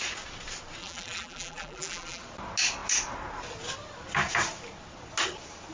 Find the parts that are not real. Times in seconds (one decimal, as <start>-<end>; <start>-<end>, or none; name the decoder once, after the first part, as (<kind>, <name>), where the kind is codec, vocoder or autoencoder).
0.8-2.2 (vocoder, BigVGAN v2)

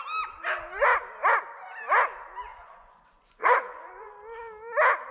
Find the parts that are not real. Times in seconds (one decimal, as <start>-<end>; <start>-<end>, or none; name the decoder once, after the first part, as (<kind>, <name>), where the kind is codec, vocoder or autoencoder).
2.5-4.1 (vocoder, Vocos)

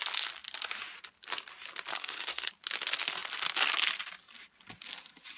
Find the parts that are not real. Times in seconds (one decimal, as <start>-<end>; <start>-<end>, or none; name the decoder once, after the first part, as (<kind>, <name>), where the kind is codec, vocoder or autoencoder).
1.9-2.5 (codec, SNAC)

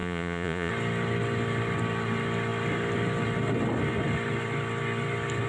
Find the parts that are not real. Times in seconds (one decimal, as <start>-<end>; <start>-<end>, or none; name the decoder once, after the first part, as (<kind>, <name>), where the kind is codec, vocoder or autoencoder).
0.0-0.7 (vocoder, Vocos)